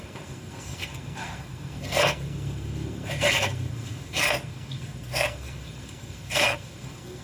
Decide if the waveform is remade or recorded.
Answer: remade